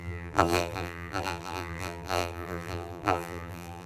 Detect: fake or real fake